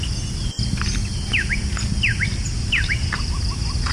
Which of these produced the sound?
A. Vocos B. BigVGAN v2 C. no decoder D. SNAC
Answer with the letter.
C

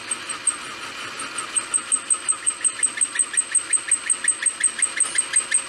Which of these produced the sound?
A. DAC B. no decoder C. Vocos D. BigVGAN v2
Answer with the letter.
B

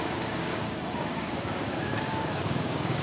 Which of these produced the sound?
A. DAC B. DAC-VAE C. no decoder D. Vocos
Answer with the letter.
A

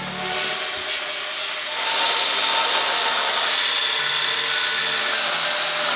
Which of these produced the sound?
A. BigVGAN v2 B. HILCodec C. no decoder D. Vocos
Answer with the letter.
C